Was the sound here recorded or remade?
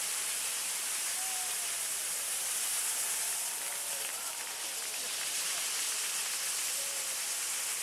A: recorded